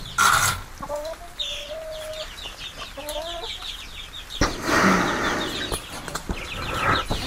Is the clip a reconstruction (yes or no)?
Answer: no